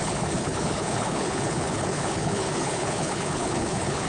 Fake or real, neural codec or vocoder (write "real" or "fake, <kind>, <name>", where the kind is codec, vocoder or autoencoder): fake, codec, HILCodec